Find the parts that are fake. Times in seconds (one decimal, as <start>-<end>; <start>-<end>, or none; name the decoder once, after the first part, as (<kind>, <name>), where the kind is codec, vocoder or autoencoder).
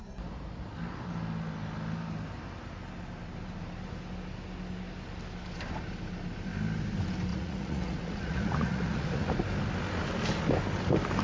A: 7.3-9.3 (vocoder, Vocos)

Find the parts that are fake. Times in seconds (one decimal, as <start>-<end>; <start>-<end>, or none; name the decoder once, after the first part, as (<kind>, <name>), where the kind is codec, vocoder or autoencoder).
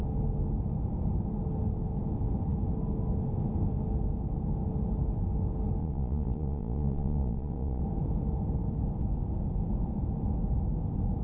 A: 5.8-7.8 (vocoder, Vocos)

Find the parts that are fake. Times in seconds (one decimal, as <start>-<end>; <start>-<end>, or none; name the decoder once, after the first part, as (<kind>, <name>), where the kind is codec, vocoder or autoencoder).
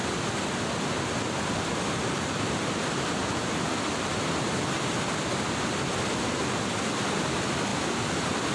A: none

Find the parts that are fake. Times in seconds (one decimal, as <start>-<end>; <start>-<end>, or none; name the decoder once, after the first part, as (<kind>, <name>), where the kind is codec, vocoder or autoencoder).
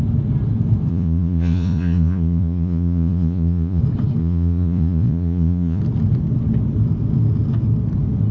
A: 0.9-3.8 (vocoder, Vocos); 4.2-5.8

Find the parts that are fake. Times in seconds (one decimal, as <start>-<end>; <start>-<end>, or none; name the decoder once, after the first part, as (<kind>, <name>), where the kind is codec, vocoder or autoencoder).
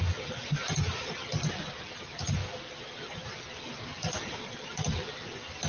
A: none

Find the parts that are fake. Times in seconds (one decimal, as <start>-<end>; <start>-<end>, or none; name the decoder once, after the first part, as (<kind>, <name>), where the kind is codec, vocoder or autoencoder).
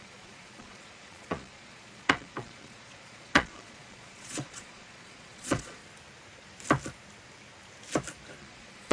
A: 0.0-5.8 (vocoder, Vocos); 8.4-8.9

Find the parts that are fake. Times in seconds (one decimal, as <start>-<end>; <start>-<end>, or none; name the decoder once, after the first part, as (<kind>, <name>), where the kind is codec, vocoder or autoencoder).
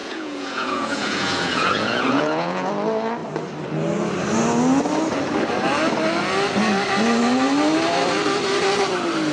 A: 0.0-2.7 (vocoder, Vocos)